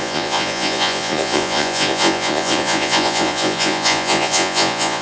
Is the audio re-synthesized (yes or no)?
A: yes